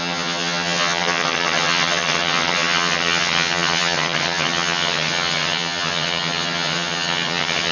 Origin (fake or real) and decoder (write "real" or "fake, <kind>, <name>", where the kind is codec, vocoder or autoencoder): fake, vocoder, HiFi-GAN